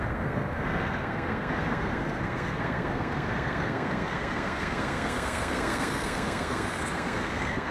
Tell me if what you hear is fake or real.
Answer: fake